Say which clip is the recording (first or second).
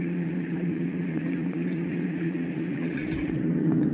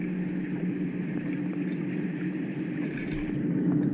second